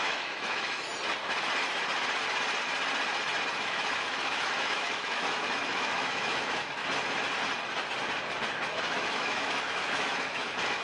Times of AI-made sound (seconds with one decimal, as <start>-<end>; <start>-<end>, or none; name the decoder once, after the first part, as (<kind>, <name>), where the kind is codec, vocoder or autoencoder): 0.0-0.9 (autoencoder, DAC-VAE); 3.6-6.8; 8.7-10.8